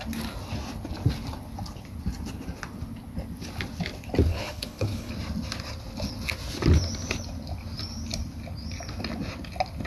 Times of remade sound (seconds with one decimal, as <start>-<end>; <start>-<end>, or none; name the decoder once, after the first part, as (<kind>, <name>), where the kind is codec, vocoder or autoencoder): 4.3-5.1 (codec, HILCodec)